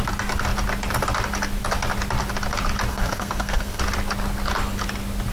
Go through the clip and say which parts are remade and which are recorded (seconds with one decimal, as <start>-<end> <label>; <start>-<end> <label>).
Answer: 0.0-2.9 recorded; 2.9-3.8 remade; 3.8-5.3 recorded